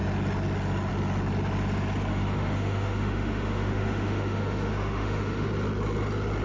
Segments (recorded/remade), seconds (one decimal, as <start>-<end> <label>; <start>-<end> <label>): 0.0-2.1 recorded; 2.1-5.5 remade; 5.5-6.4 recorded